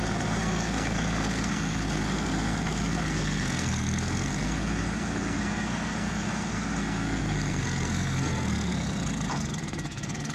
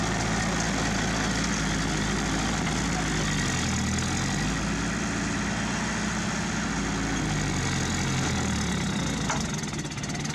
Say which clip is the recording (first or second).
second